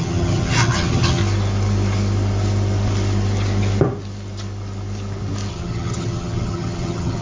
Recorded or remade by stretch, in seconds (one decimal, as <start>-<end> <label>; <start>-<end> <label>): 0.0-1.2 remade; 1.2-5.5 recorded; 5.5-7.2 remade